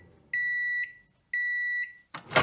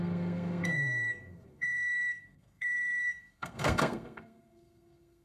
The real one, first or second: first